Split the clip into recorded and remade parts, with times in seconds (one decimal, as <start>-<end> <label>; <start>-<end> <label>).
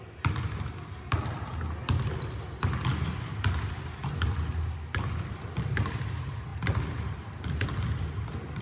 0.0-8.6 recorded